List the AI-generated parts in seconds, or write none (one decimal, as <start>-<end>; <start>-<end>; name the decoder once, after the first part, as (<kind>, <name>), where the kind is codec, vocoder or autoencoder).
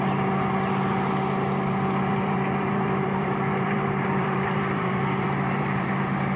2.1-5.9 (vocoder, BigVGAN v2)